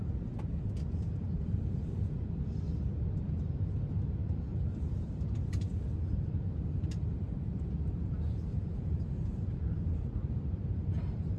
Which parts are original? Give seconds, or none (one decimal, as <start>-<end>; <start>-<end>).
0.0-4.2; 7.6-8.5